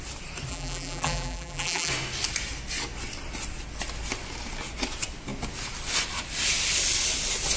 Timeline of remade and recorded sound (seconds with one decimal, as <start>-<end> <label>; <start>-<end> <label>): 0.0-0.5 recorded; 0.5-1.9 remade; 1.9-7.6 recorded